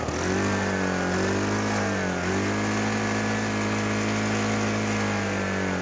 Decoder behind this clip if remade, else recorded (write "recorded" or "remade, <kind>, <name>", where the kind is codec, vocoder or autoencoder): recorded